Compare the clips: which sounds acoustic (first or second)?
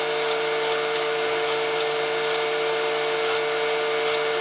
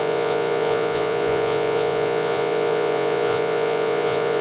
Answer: first